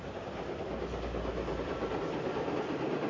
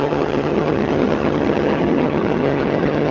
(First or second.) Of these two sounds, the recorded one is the first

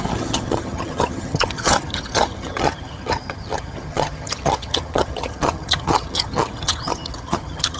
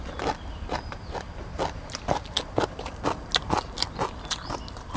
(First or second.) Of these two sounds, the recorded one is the second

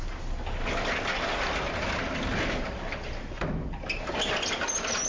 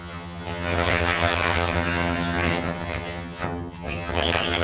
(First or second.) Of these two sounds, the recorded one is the first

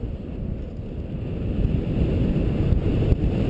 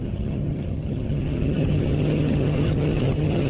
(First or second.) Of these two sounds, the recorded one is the first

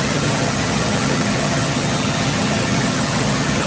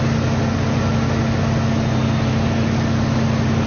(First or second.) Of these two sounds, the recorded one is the second